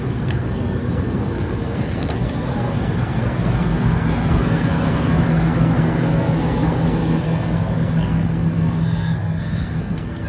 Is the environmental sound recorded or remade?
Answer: remade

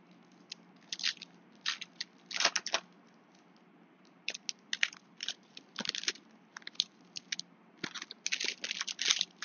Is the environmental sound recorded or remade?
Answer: recorded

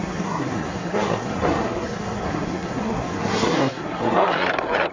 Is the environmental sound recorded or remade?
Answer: remade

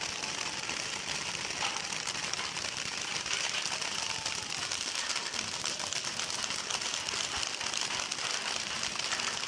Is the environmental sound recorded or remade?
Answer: recorded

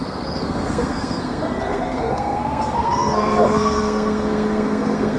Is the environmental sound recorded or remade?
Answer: remade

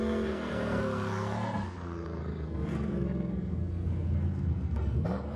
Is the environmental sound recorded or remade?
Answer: remade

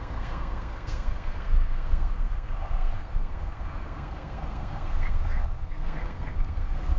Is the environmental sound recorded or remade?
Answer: remade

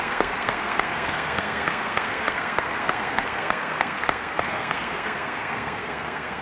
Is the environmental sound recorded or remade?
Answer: remade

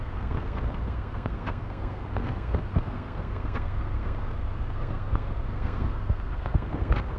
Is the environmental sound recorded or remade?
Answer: remade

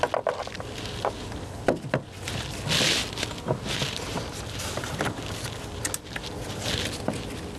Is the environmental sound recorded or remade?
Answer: recorded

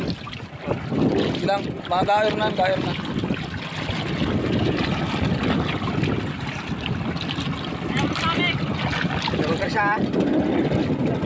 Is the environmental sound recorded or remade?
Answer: recorded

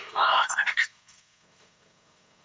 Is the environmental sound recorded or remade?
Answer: remade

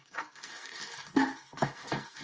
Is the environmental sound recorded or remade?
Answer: remade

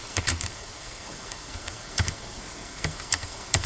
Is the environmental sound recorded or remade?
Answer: remade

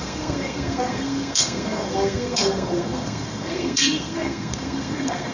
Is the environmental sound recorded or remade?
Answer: remade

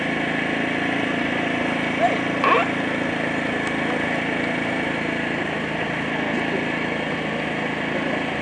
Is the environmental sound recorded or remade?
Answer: recorded